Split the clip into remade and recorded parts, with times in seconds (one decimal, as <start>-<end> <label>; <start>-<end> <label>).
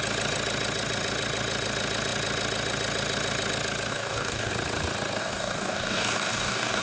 0.0-3.9 recorded; 3.9-4.5 remade; 4.5-5.2 recorded; 5.2-6.8 remade